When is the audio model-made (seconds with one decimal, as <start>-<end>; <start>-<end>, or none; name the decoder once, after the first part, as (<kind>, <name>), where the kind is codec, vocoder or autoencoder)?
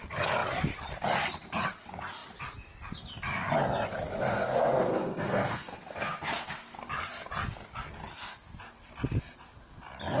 4.2-6.8 (codec, SNAC); 8.1-8.6